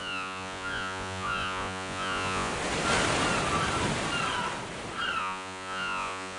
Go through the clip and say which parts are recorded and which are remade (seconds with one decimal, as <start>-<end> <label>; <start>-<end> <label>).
0.0-2.5 remade; 2.5-5.2 recorded; 5.2-6.4 remade